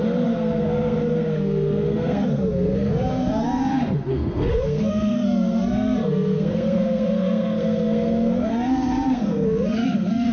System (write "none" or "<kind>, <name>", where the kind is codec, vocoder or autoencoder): codec, SNAC